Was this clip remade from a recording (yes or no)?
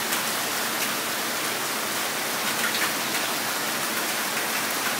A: no